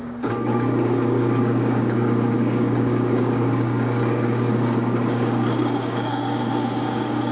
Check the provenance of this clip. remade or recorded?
remade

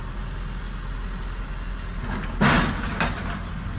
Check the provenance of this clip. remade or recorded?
recorded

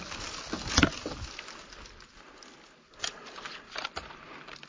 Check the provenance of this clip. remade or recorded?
recorded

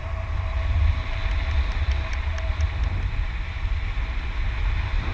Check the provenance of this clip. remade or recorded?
remade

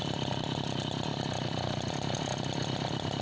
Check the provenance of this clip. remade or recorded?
recorded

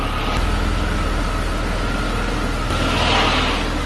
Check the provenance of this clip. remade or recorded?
recorded